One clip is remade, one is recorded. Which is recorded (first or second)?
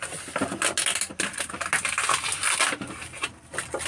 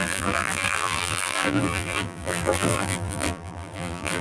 first